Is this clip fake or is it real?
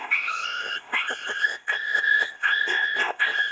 fake